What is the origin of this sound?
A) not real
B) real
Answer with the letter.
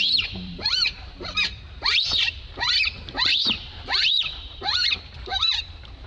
A